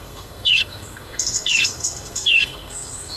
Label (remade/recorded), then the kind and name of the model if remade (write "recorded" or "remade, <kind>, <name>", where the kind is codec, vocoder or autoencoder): remade, codec, SNAC